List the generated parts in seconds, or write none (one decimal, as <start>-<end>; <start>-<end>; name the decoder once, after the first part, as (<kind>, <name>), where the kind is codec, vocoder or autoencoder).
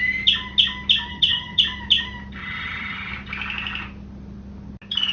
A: 1.1-1.6 (vocoder, HiFi-GAN); 2.4-3.1